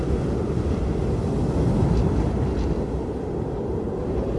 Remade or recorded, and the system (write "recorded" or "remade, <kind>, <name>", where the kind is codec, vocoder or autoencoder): recorded